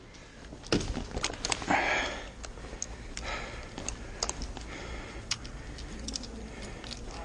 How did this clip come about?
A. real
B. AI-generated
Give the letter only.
A